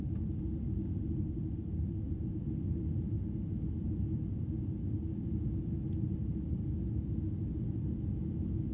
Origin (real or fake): real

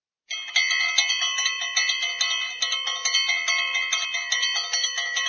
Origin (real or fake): real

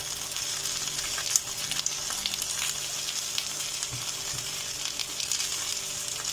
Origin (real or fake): real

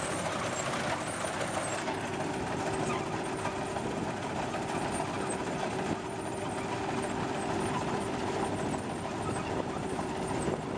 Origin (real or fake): real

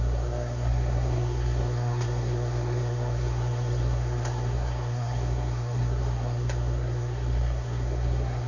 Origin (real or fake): fake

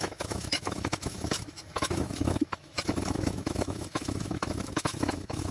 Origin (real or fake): fake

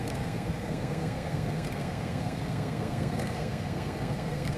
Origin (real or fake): fake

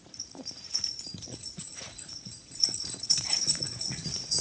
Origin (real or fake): fake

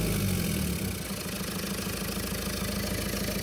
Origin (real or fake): real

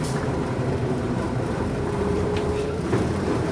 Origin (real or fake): fake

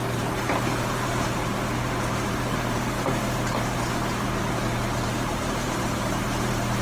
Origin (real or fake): fake